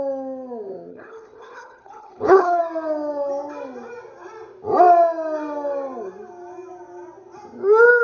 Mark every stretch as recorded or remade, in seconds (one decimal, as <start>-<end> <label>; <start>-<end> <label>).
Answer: 0.0-0.9 recorded; 0.9-2.6 remade; 2.6-8.0 recorded

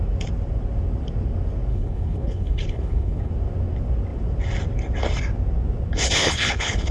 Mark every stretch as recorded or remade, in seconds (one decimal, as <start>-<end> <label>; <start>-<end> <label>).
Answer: 0.0-1.7 recorded; 1.7-3.3 remade; 3.3-6.2 recorded; 6.2-6.9 remade

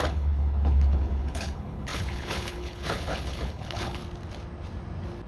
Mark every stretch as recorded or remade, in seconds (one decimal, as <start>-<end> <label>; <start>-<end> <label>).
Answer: 0.0-4.0 remade; 4.0-5.3 recorded